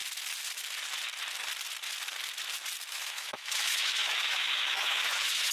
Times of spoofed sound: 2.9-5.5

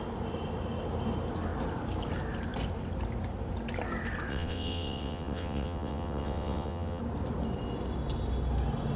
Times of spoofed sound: 4.3-7.0